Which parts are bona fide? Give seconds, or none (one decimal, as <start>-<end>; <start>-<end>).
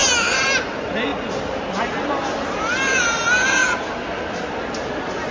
0.0-5.3